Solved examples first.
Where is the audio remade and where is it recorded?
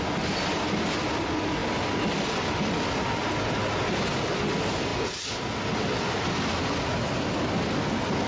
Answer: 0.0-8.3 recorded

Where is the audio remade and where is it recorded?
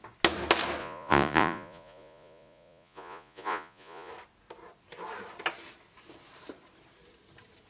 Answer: 0.0-0.8 recorded; 0.8-4.1 remade; 4.1-7.7 recorded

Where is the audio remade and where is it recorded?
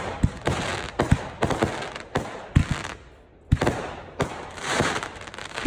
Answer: 0.0-0.7 remade; 0.7-4.1 recorded; 4.1-5.7 remade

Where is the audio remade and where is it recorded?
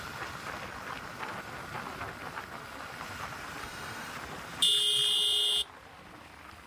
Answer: 0.0-3.6 recorded; 3.6-4.1 remade; 4.1-6.7 recorded